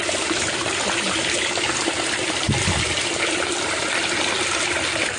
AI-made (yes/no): no